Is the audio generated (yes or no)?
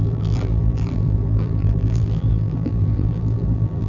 yes